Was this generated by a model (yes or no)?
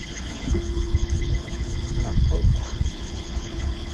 yes